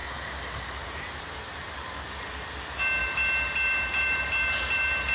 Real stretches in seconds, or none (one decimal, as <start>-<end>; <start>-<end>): 2.1-3.0